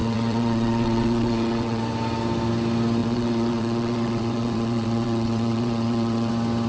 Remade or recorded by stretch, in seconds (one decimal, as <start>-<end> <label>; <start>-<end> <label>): 0.0-1.8 remade; 1.8-3.0 recorded; 3.0-6.3 remade; 6.3-6.7 recorded